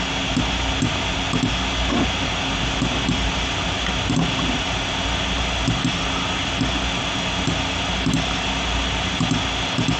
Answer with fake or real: real